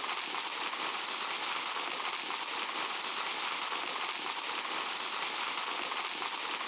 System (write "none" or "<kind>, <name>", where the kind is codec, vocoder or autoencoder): none